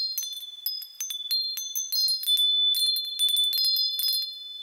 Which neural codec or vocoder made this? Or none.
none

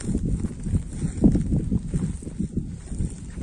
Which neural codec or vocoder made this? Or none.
none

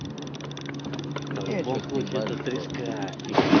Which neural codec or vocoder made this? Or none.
none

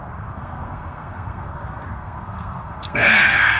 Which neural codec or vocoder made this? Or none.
codec, SNAC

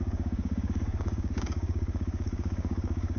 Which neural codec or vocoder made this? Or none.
codec, DAC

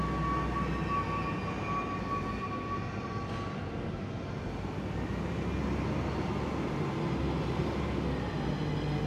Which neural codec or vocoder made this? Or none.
none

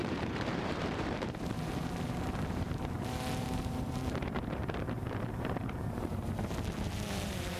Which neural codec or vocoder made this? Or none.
vocoder, BigVGAN v2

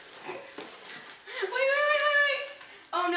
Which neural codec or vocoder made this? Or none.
none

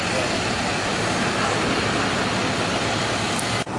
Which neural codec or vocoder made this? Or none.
none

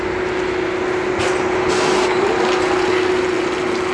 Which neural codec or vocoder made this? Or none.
none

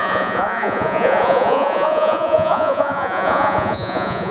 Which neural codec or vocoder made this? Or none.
vocoder, Vocos